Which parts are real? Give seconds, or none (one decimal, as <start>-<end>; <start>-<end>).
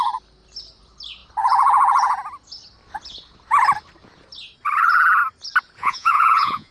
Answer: 0.0-5.8